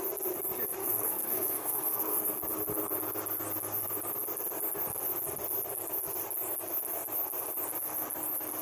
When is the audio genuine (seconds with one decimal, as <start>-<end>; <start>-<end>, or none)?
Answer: 0.0-0.8; 2.3-8.6